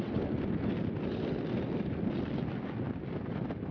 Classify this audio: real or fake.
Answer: real